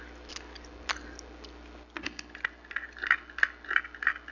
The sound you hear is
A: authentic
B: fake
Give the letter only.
A